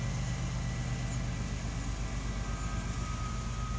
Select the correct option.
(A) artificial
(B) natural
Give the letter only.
B